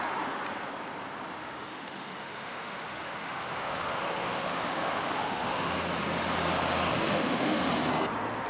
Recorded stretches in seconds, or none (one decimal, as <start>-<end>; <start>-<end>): 0.0-1.4; 5.7-6.9; 7.6-8.5